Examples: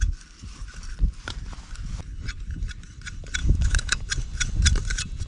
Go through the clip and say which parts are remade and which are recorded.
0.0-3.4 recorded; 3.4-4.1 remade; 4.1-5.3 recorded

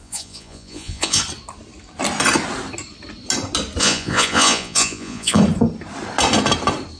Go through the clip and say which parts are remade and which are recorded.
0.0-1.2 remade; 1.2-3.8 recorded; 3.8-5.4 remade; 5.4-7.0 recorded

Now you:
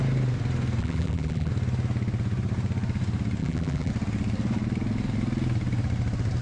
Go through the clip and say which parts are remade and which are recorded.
0.0-0.8 recorded; 0.8-1.5 remade; 1.5-3.4 recorded; 3.4-3.9 remade; 3.9-6.4 recorded